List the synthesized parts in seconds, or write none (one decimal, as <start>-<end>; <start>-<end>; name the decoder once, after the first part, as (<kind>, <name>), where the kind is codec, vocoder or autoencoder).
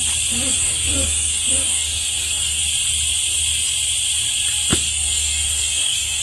0.5-2.6 (codec, DAC); 4.7-6.2